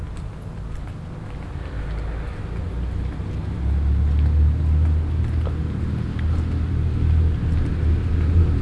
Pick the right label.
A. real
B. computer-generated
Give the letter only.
A